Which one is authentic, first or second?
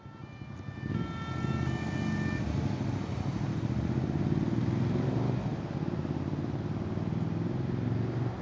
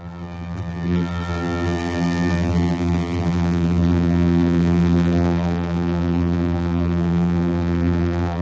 first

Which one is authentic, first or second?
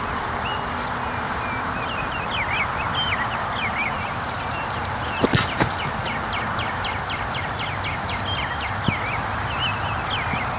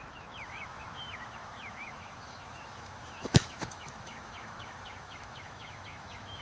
first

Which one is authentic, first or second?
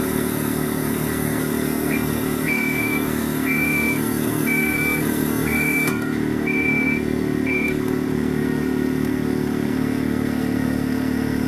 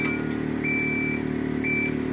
second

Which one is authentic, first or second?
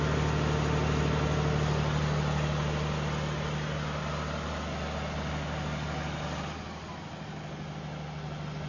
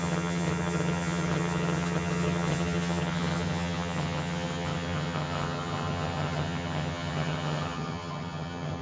first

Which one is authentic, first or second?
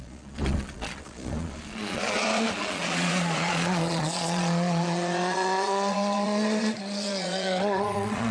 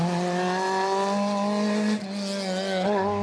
second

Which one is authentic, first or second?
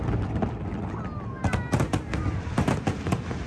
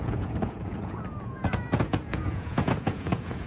first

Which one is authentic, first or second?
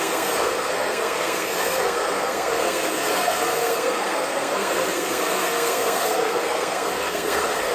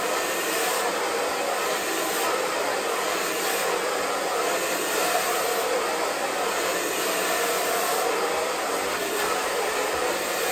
second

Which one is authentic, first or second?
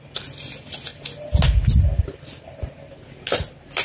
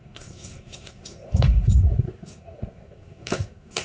first